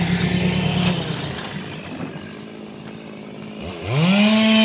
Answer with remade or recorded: recorded